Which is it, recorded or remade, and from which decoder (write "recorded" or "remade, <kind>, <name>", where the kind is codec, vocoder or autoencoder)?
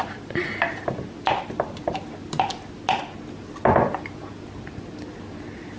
recorded